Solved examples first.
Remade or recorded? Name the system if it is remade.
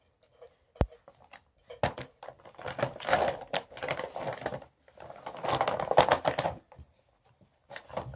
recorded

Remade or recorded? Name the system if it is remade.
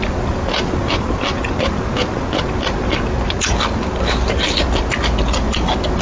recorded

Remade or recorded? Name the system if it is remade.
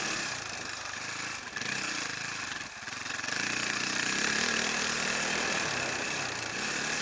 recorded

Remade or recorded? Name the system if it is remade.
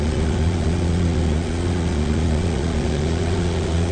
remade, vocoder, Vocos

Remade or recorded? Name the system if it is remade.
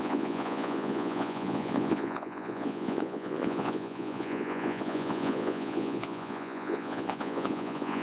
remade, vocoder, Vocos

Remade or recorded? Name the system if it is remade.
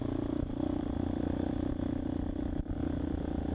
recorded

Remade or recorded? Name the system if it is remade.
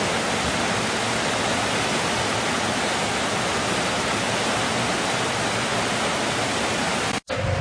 recorded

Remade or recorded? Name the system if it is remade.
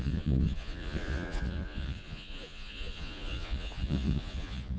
remade, vocoder, Vocos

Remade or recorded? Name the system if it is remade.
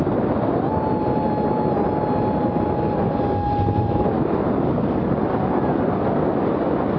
recorded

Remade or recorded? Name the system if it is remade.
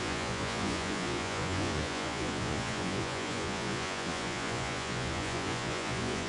remade, vocoder, Vocos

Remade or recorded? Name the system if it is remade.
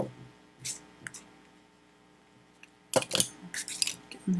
recorded